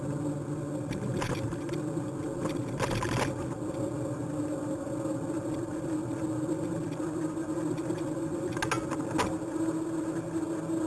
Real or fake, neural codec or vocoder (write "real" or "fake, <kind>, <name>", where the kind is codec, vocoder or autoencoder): real